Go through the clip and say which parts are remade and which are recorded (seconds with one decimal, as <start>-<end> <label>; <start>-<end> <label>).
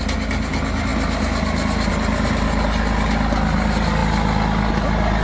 0.0-5.2 recorded